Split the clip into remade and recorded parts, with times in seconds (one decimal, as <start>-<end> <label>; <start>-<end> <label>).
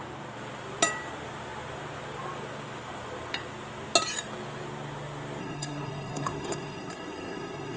0.0-5.4 recorded; 5.4-7.8 remade